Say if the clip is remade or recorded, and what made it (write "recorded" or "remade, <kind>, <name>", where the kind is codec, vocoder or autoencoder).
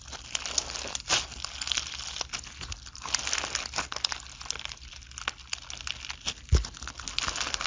recorded